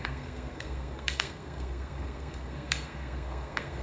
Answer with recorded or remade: remade